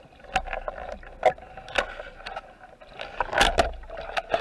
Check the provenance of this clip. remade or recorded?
recorded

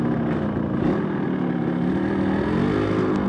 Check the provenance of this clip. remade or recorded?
recorded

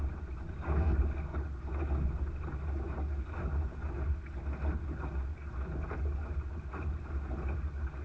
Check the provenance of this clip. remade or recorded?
recorded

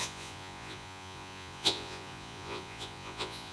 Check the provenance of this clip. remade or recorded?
remade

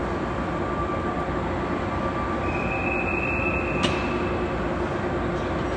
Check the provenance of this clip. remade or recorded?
recorded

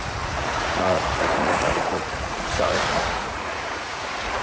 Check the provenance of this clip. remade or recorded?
remade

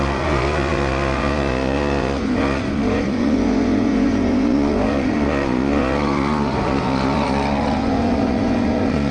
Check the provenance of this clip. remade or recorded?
remade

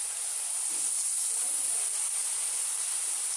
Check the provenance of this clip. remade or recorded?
recorded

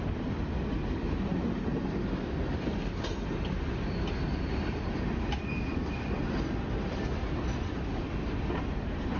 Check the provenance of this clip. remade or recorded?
recorded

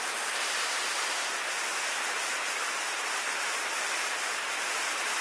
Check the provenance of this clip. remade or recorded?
recorded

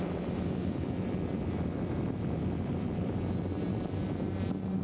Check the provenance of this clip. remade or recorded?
recorded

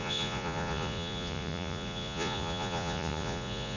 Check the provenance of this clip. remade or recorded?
remade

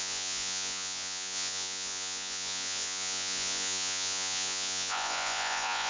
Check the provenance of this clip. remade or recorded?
remade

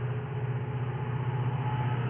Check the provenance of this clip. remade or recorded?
recorded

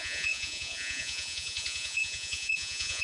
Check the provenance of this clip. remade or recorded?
remade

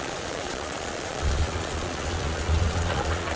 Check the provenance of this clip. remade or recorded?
remade